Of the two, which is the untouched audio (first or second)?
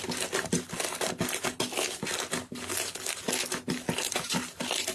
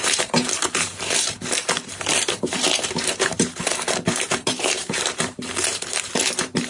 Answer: first